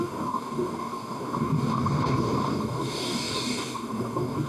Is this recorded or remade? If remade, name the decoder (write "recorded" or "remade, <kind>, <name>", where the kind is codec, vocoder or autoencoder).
remade, codec, DAC